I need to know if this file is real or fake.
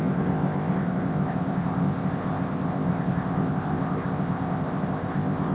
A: fake